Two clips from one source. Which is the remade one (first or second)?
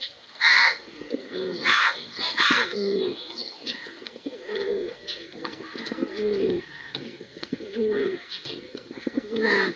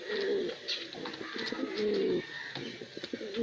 first